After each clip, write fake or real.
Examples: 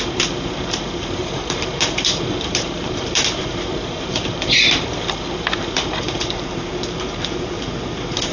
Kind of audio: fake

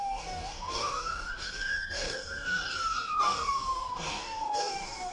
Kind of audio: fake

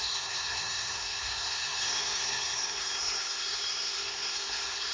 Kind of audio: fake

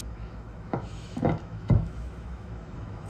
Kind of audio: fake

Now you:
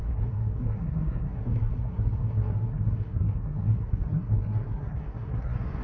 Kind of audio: fake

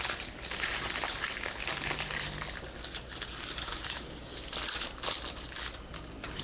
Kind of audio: real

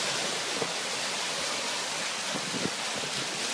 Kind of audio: real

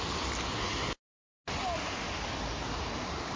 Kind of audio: real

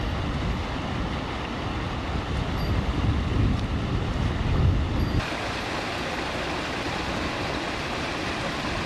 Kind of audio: real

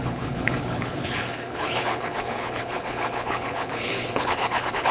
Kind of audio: fake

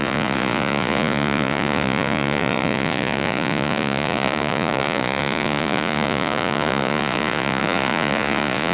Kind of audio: fake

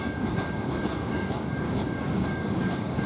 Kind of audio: fake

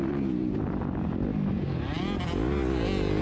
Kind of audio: real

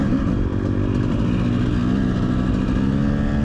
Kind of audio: real